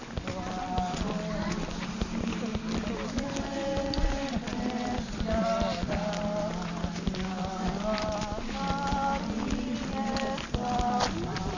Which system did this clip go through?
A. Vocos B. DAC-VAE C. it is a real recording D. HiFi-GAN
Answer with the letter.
C